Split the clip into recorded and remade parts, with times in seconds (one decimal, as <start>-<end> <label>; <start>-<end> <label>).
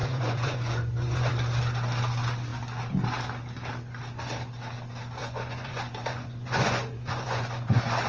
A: 0.0-1.3 remade; 1.3-5.2 recorded; 5.2-8.1 remade